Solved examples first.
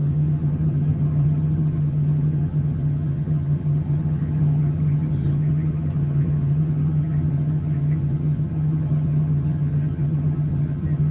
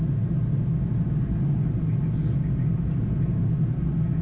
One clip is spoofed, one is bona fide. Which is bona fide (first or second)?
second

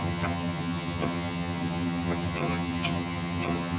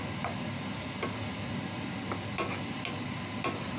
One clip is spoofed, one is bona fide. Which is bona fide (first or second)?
second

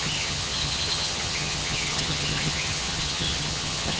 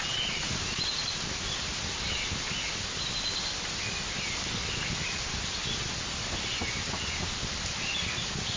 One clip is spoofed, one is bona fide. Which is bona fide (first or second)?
second